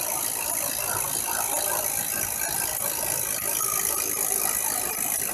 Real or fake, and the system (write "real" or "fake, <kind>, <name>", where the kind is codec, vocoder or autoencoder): real